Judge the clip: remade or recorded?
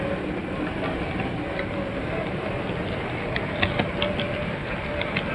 recorded